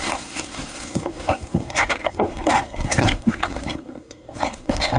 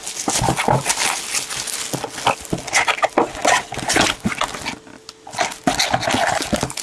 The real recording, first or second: second